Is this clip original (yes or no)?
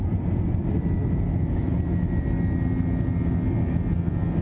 yes